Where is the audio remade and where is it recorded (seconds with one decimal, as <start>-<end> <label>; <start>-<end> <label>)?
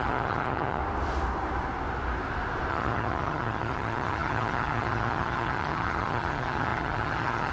0.0-0.8 remade; 0.8-2.7 recorded; 2.7-7.5 remade